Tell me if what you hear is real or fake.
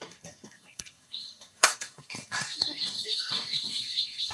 fake